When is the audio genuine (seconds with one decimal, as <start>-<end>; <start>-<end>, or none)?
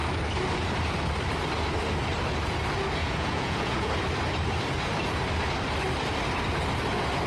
0.0-3.0; 4.0-7.3